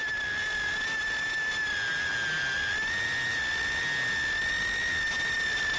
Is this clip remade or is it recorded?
recorded